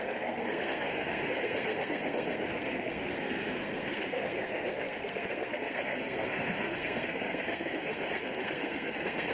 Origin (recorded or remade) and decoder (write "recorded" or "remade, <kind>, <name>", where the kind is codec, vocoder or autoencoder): remade, codec, SNAC